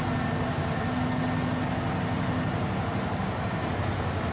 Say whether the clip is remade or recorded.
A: recorded